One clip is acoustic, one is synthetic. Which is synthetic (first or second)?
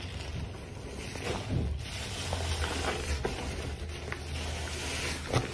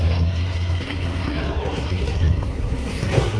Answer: second